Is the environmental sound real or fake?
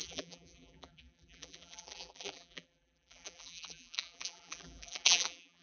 fake